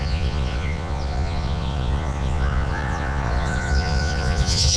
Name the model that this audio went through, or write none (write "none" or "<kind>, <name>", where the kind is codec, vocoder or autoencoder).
vocoder, Vocos